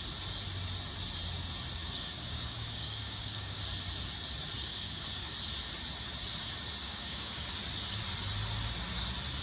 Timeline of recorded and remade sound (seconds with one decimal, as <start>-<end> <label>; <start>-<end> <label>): 0.0-1.8 recorded; 1.8-3.6 remade; 3.6-4.7 recorded; 4.7-5.3 remade; 5.3-6.8 recorded; 6.8-7.5 remade; 7.5-9.4 recorded